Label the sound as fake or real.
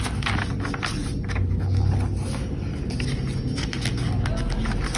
real